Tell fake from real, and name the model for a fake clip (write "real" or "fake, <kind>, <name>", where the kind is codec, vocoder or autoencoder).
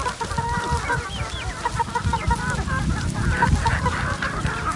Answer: real